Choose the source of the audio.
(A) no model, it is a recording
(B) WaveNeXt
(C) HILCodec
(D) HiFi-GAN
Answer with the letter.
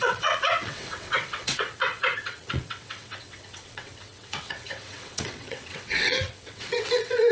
B